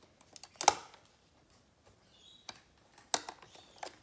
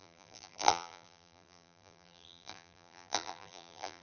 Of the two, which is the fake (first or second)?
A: second